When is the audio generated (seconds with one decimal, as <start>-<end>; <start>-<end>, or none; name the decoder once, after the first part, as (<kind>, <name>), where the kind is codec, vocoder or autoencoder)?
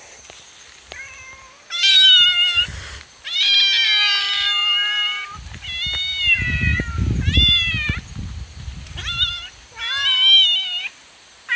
none